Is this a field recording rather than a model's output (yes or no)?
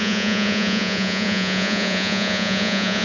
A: no